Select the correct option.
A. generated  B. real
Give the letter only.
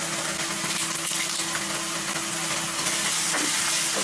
B